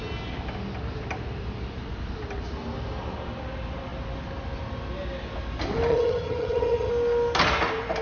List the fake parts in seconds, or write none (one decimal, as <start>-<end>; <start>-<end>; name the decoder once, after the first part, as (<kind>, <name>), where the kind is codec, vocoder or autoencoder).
5.9-6.9 (vocoder, HiFi-GAN)